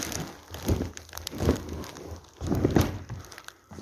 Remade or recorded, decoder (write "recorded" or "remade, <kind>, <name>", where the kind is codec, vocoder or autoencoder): recorded